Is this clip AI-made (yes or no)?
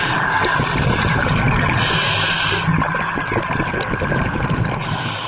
no